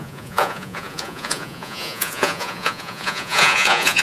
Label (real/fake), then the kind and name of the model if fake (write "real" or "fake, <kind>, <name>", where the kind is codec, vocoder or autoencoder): fake, vocoder, Vocos